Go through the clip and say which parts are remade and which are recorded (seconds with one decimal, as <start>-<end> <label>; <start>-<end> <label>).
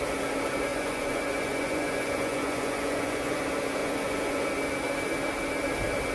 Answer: 0.0-0.7 recorded; 0.7-3.4 remade; 3.4-3.8 recorded; 3.8-4.4 remade; 4.4-6.1 recorded